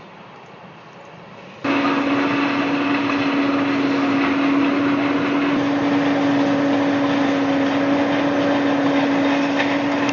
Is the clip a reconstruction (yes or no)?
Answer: no